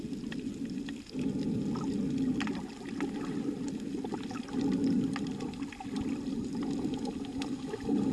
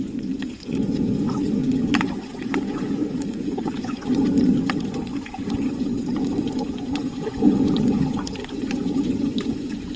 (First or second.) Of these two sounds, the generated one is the second